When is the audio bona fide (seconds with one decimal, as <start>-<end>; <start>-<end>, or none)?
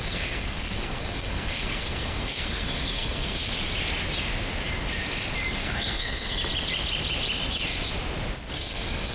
3.4-5.6; 6.4-8.5